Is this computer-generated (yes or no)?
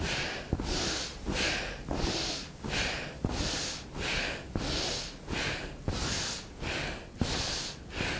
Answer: no